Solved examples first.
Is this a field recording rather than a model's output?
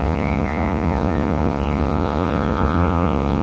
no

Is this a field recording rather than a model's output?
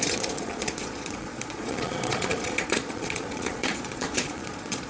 no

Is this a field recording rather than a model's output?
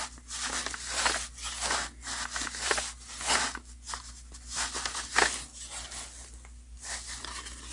yes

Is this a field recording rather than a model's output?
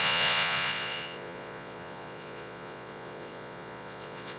no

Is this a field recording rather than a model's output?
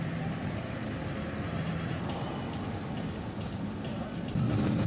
yes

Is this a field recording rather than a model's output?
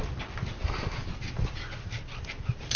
yes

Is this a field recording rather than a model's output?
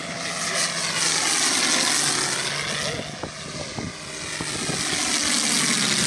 yes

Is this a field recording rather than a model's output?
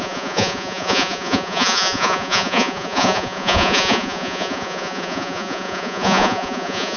no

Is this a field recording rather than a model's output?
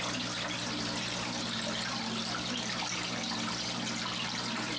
yes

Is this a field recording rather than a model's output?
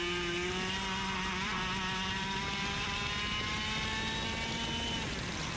yes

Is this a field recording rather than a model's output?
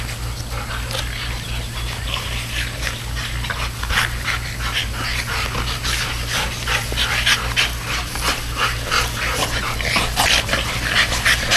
yes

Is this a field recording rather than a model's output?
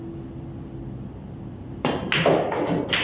yes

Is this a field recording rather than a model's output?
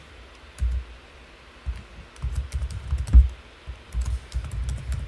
yes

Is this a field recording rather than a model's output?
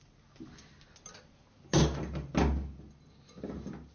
yes